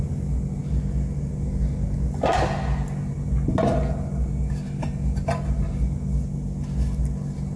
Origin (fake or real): real